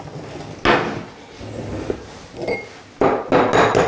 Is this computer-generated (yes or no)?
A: no